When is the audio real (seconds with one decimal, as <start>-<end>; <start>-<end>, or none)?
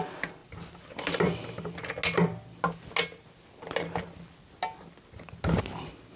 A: 0.0-6.2